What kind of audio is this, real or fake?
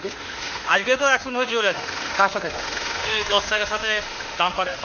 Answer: fake